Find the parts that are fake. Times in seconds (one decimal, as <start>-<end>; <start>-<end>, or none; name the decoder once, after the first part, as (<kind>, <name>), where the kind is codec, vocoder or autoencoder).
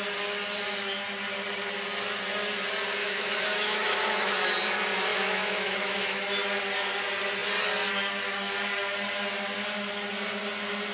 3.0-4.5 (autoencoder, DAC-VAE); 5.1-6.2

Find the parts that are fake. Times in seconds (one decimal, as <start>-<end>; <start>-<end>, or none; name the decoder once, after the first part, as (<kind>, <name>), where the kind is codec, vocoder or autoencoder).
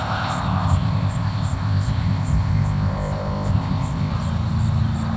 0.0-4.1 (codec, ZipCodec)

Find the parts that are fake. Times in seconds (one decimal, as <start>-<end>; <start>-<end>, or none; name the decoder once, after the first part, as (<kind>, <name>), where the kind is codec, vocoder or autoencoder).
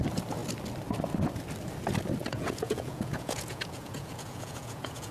2.2-5.1 (vocoder, Vocos)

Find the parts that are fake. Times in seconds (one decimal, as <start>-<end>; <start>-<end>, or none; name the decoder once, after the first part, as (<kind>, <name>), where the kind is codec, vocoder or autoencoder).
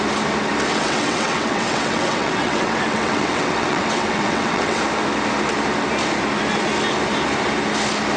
0.7-4.8 (vocoder, WaveNeXt)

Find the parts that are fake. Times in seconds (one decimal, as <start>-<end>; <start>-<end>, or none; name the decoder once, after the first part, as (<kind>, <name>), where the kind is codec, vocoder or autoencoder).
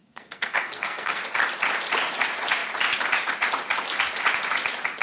0.0-1.2 (codec, SNAC)